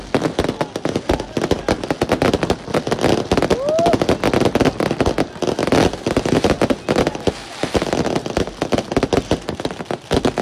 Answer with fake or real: real